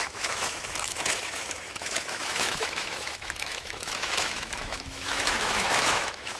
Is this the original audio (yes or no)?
no